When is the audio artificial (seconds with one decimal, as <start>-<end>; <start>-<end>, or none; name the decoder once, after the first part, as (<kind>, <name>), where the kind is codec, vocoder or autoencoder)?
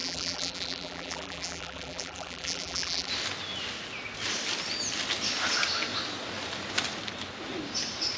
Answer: 0.0-3.1 (vocoder, BigVGAN v2)